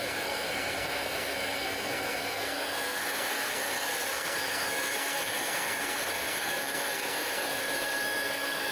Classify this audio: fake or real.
fake